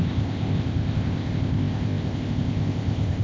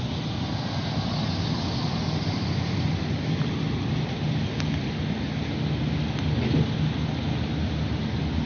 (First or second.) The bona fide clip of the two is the second